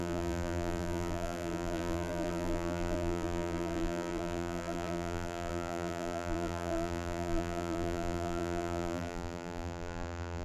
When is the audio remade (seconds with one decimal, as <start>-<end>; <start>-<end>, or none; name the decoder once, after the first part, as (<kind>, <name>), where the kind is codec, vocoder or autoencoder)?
0.0-10.4 (vocoder, BigVGAN v2)